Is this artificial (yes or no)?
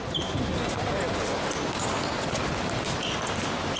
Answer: no